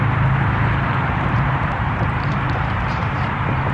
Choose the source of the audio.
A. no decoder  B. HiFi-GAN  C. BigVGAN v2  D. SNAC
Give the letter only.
C